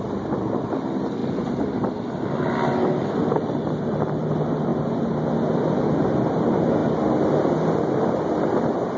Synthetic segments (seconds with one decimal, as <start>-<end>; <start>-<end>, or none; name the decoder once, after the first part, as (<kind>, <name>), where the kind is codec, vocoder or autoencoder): none